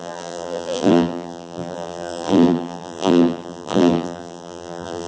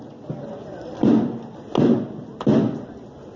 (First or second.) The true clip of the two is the second